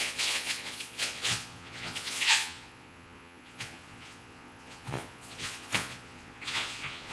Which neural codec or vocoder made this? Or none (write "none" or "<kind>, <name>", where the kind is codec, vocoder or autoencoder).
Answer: vocoder, Vocos